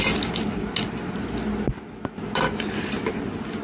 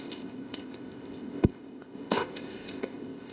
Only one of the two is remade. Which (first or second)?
second